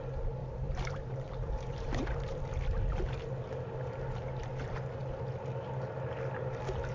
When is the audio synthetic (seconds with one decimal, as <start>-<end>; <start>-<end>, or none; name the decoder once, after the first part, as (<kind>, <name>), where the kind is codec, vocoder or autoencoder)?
0.4-2.5 (vocoder, BigVGAN v2)